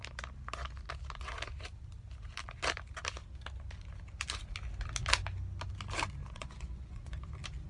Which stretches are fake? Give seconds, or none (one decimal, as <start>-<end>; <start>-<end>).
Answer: 6.2-7.2